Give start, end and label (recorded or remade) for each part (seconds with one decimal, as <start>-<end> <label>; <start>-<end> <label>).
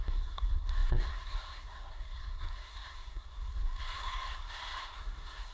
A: 0.0-5.5 remade